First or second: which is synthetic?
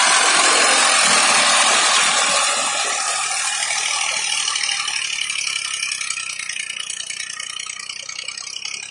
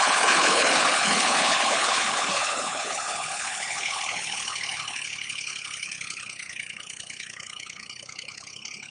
second